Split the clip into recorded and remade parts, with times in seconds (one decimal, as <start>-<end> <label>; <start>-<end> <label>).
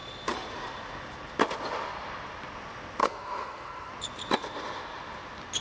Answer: 0.0-3.0 recorded; 3.0-3.9 remade; 3.9-5.6 recorded